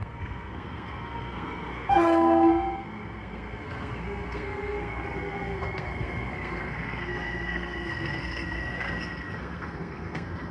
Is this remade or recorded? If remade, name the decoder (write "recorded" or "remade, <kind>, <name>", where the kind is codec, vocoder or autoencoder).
remade, codec, SNAC